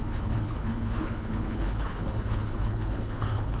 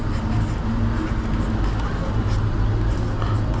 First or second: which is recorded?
second